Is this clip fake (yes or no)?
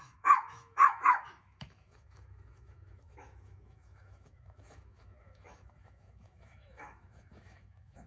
yes